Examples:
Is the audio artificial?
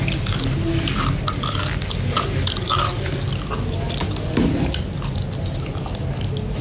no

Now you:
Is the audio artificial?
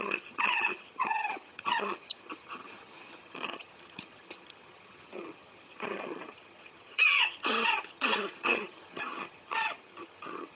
yes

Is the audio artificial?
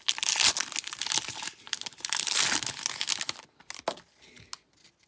no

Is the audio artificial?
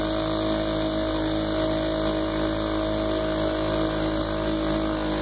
no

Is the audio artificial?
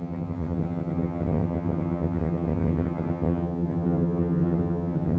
yes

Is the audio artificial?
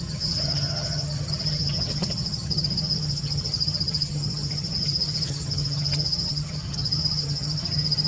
yes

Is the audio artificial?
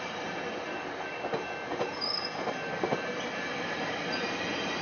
no